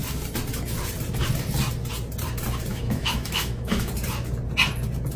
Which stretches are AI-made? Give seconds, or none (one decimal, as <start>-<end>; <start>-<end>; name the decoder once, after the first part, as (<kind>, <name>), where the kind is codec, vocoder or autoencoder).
2.7-3.9 (autoencoder, DAC-VAE)